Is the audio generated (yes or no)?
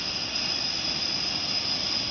no